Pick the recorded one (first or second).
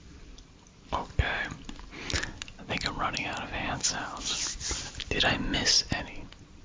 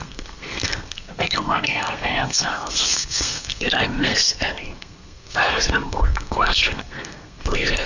first